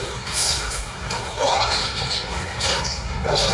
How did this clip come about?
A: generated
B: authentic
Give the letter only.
A